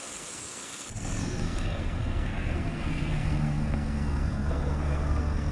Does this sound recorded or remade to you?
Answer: remade